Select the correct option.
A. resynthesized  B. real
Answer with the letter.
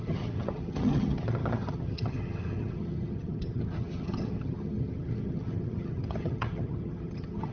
A